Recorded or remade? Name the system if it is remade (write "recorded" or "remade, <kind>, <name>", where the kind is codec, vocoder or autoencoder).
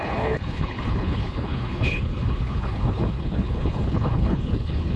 remade, codec, HILCodec